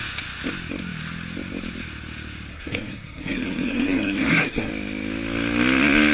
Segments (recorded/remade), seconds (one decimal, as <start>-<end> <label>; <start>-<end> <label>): 0.0-2.5 recorded; 2.5-4.7 remade; 4.7-6.1 recorded